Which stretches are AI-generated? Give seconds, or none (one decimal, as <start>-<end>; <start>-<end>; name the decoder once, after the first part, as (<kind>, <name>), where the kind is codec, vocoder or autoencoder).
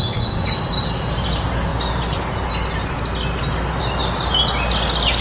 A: none